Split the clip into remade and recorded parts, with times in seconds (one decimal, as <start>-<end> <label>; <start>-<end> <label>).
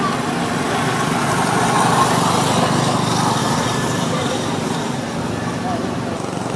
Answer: 0.0-3.4 recorded; 3.4-5.2 remade; 5.2-6.6 recorded